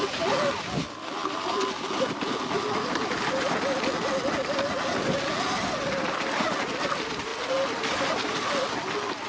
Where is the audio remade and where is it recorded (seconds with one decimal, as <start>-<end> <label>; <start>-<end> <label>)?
0.0-9.3 recorded